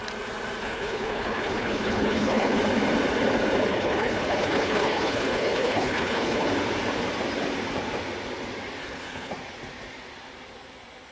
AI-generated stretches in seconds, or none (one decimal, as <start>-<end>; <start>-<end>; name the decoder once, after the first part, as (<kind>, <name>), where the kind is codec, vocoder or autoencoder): 0.6-2.6 (codec, HILCodec); 3.7-6.5; 8.8-9.3